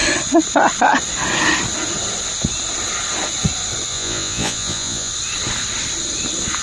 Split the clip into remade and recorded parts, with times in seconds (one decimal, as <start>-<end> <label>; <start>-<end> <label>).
0.0-3.9 recorded; 3.9-5.1 remade; 5.1-6.6 recorded